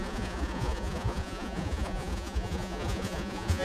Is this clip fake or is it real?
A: fake